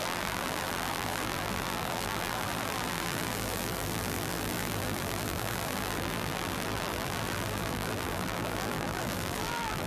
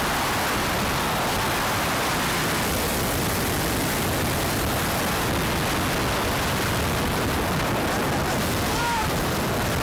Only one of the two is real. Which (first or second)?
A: second